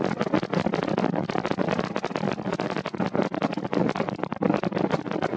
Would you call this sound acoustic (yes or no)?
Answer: yes